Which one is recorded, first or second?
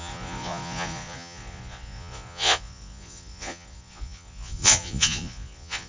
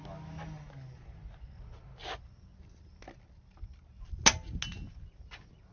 second